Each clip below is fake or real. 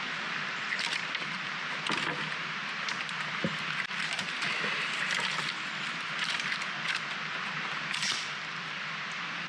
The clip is real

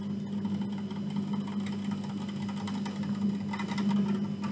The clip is real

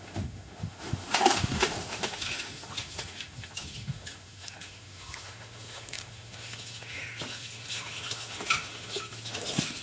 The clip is fake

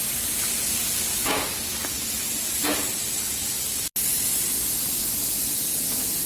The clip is real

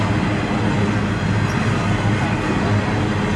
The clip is real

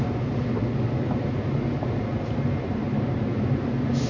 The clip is real